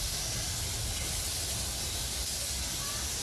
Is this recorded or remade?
recorded